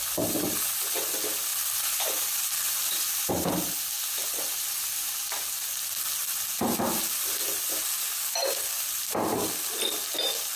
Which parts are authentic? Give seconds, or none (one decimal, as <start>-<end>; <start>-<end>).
0.0-10.6